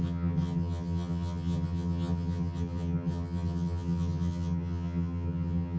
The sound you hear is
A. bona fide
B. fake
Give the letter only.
B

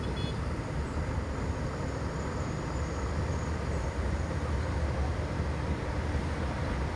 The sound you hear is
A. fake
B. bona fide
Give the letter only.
B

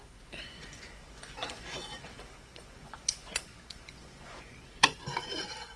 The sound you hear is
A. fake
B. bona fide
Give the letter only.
A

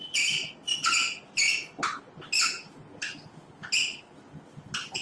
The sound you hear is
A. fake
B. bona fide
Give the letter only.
B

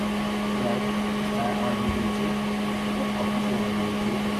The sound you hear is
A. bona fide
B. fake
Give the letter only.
A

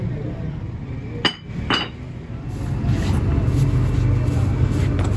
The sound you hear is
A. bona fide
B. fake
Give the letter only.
A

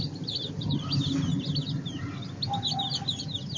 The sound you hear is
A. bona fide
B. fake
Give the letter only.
A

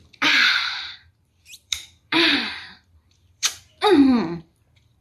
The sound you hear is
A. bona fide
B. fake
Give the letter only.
B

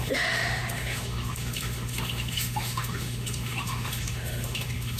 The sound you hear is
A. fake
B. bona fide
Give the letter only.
A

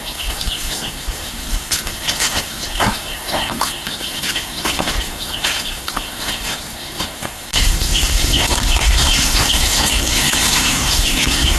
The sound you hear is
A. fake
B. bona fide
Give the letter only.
A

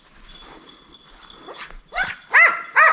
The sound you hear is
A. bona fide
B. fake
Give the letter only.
A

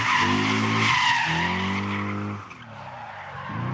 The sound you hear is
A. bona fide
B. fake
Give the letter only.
A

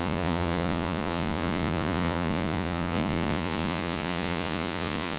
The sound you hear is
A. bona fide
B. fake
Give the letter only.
B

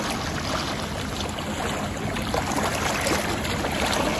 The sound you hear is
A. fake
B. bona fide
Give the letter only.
B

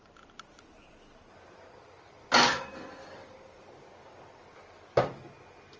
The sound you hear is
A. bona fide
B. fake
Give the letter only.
A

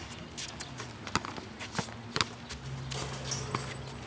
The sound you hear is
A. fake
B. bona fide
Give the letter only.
B